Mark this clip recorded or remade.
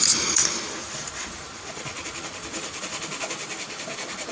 remade